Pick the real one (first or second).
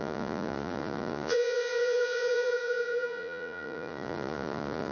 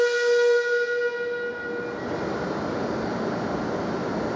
second